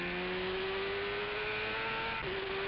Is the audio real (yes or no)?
yes